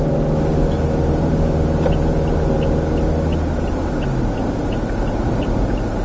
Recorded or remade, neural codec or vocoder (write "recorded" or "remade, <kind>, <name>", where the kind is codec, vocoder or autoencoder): recorded